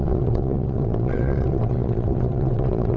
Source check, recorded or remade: remade